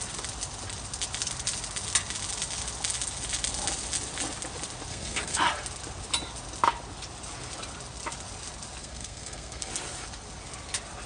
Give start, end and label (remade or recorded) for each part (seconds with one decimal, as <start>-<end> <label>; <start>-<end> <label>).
0.0-4.9 recorded; 4.9-5.4 remade; 5.4-8.8 recorded; 8.8-9.7 remade; 9.7-11.1 recorded